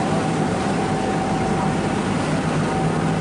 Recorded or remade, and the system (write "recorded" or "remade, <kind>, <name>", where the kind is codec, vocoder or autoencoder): recorded